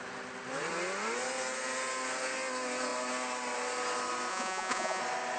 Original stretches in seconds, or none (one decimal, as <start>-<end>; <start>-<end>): 0.0-4.3; 5.0-5.4